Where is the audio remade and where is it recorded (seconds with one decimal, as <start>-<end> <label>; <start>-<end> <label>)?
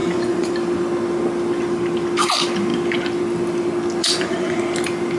0.0-0.5 remade; 0.5-4.0 recorded; 4.0-4.6 remade; 4.6-5.2 recorded